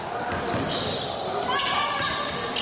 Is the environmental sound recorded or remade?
recorded